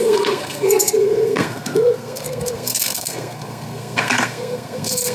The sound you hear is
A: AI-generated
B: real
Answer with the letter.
A